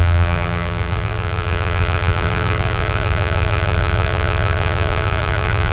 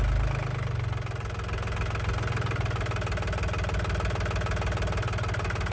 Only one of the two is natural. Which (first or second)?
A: second